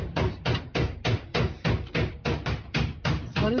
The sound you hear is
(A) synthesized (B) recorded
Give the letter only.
B